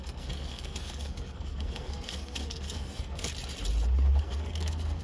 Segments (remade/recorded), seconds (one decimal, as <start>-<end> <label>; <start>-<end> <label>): 0.0-3.3 remade; 3.3-4.2 recorded; 4.2-5.0 remade